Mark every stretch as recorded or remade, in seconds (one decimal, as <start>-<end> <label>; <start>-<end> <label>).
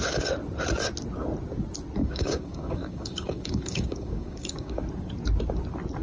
0.0-2.0 recorded; 2.0-4.8 remade; 4.8-6.0 recorded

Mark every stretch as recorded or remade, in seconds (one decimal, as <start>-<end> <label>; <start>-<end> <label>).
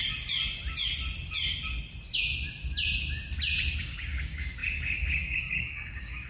0.0-3.8 recorded; 3.8-6.3 remade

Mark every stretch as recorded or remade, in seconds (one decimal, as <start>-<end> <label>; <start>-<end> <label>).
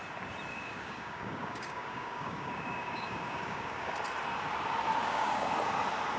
0.0-0.5 recorded; 0.5-3.9 remade; 3.9-5.0 recorded; 5.0-5.5 remade; 5.5-6.2 recorded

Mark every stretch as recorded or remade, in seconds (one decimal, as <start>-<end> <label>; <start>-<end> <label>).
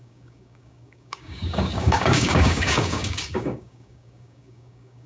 0.0-5.1 remade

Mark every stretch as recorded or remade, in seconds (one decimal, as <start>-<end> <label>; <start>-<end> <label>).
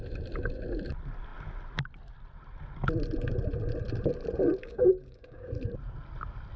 0.0-4.6 recorded; 4.6-5.5 remade; 5.5-6.6 recorded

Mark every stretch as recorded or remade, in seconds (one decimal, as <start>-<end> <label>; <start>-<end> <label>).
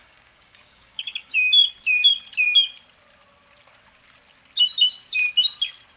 0.0-1.6 remade; 1.6-6.0 recorded